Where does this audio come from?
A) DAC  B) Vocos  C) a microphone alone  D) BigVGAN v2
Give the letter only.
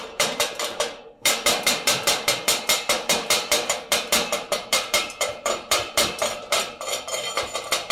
D